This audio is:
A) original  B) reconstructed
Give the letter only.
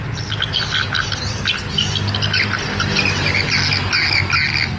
A